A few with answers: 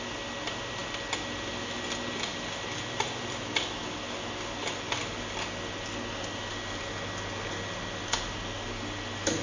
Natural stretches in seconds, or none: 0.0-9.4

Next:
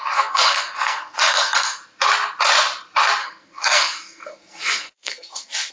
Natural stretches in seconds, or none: 1.8-3.2

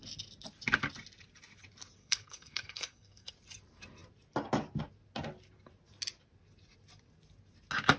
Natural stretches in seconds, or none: 0.0-2.0; 3.3-8.0

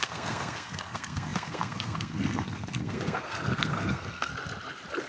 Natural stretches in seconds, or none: 4.3-5.1